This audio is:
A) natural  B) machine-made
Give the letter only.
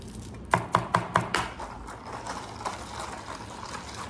A